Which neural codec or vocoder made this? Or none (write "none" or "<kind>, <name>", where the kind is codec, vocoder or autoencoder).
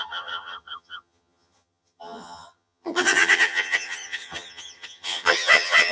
vocoder, HiFi-GAN